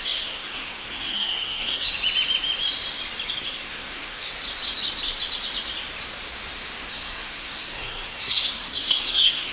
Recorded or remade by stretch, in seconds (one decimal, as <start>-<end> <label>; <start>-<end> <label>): 0.0-1.9 remade; 1.9-3.4 recorded; 3.4-4.3 remade; 4.3-6.9 recorded; 6.9-9.5 remade